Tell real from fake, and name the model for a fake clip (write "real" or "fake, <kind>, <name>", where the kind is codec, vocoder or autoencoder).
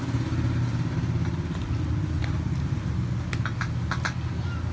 real